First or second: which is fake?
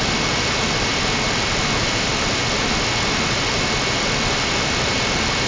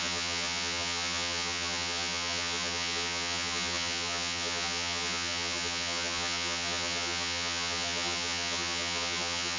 second